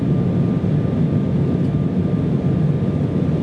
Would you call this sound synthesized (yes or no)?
no